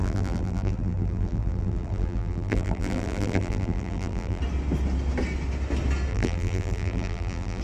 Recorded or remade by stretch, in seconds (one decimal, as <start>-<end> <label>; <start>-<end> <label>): 0.0-4.4 remade; 4.4-6.1 recorded; 6.1-7.6 remade